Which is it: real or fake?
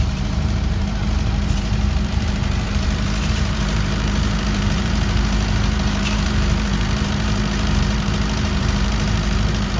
fake